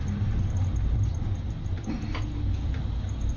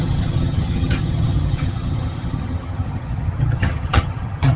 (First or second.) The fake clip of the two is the second